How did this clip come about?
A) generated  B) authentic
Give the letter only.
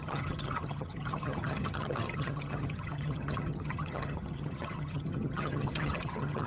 A